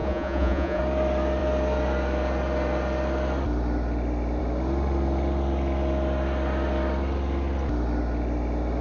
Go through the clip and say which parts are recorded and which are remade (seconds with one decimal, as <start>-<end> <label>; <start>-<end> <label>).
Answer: 0.0-0.8 remade; 0.8-8.8 recorded